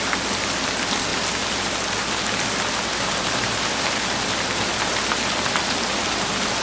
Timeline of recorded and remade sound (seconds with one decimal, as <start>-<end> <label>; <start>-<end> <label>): 0.0-6.6 recorded